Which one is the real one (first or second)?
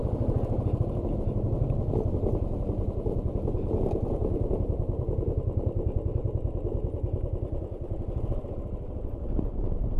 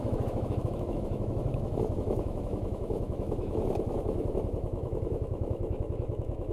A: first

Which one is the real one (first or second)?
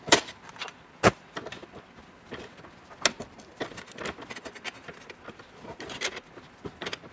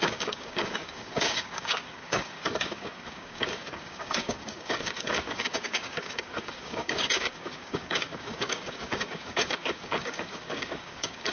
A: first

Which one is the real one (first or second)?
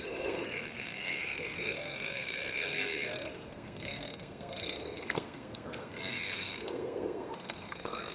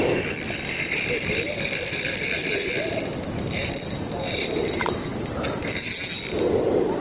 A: second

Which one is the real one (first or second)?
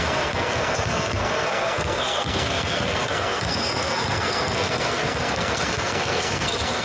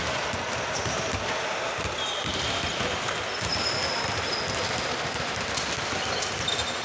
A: second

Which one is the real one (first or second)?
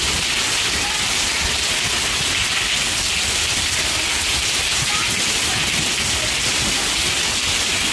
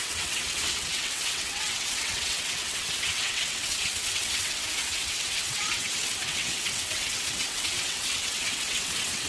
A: first